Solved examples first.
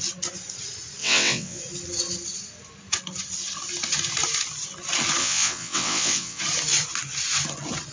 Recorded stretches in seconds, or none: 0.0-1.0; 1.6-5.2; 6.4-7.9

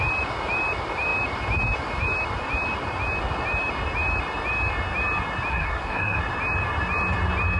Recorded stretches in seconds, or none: 0.0-5.5; 6.2-7.6

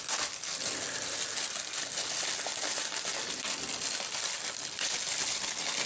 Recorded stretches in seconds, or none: 0.0-5.9

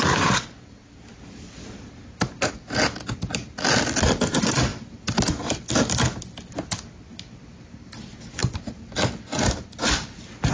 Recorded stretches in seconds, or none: 0.0-10.5

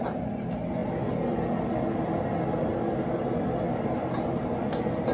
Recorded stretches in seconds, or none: 0.0-5.1